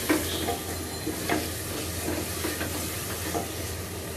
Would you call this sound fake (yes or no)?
no